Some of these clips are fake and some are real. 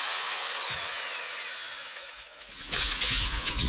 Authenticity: fake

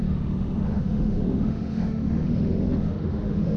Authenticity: fake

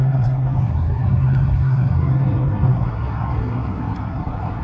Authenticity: fake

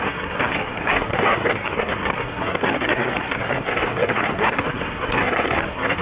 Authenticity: fake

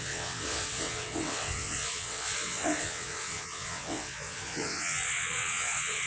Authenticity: fake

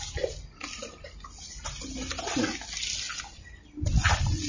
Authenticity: real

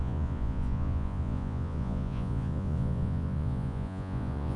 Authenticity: fake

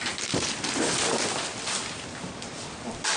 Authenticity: fake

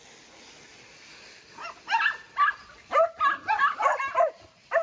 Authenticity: real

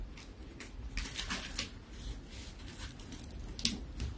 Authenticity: real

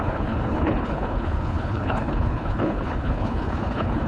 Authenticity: fake